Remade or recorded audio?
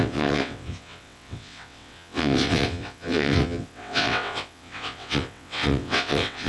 remade